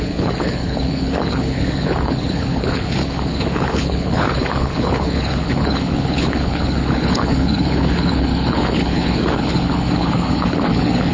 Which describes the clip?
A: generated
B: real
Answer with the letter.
A